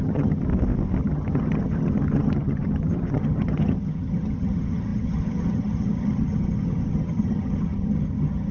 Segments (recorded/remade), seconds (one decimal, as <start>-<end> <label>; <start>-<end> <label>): 0.0-0.5 remade; 0.5-1.0 recorded; 1.0-8.5 remade